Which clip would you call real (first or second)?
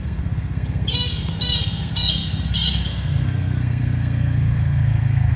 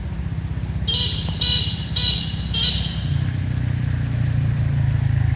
second